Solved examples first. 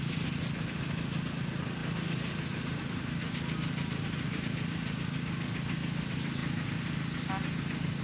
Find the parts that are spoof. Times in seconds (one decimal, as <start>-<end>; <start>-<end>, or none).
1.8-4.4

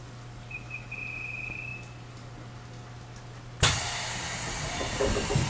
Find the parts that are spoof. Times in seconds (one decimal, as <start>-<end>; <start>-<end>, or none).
none

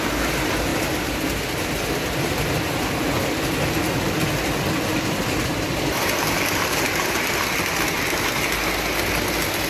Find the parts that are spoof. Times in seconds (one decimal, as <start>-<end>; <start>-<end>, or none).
4.9-7.3

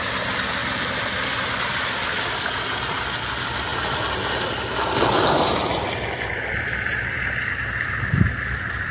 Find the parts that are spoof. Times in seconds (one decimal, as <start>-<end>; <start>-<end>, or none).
none